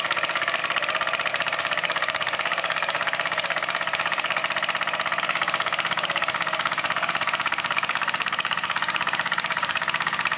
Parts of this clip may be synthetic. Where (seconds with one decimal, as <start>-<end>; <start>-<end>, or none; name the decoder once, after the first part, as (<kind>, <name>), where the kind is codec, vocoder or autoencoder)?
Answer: 0.0-0.6 (codec, DAC); 1.3-4.4; 5.2-10.4